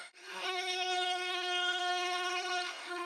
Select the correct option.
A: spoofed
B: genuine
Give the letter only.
A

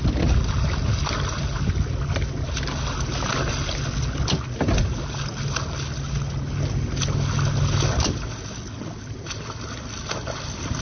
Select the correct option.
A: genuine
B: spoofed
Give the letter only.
A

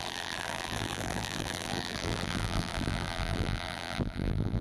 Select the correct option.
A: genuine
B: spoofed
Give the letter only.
B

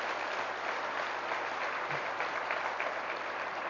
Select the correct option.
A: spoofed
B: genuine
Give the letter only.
B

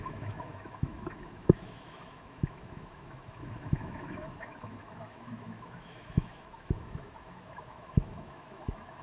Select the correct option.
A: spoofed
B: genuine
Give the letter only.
A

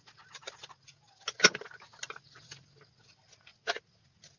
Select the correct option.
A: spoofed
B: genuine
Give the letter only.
B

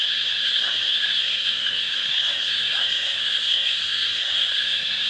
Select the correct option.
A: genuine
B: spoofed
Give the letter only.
B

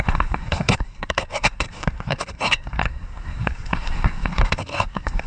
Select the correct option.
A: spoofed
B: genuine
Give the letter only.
A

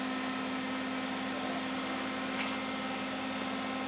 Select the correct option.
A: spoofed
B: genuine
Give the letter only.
B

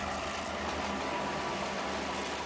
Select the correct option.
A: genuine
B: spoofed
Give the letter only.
A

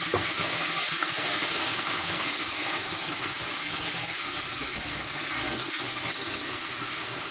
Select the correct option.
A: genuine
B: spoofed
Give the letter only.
B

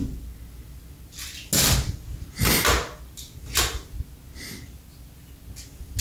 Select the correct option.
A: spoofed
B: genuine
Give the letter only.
B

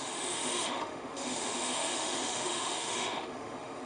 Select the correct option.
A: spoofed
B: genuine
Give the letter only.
A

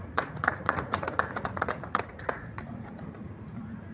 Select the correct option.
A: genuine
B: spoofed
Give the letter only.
B